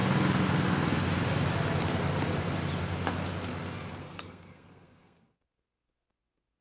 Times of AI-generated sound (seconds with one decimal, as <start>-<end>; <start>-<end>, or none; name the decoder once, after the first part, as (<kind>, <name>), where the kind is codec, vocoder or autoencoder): 4.0-6.6 (codec, SNAC)